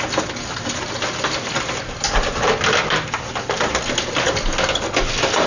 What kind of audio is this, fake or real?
real